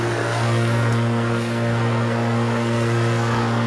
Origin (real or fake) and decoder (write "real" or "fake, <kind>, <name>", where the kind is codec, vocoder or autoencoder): fake, codec, SNAC